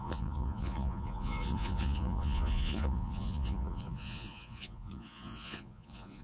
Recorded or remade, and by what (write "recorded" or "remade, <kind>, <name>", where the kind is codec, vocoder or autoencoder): remade, vocoder, Vocos